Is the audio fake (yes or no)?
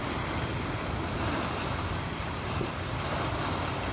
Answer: no